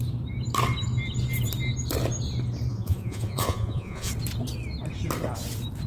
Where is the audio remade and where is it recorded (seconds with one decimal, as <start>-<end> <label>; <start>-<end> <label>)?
0.0-2.7 recorded; 2.7-4.1 remade; 4.1-5.9 recorded

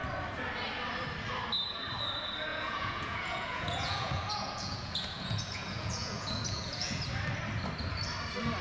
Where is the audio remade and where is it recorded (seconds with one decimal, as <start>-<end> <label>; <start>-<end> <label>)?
0.0-2.5 recorded; 2.5-7.0 remade; 7.0-8.6 recorded